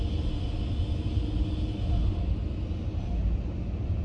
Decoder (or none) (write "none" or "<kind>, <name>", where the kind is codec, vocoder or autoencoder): none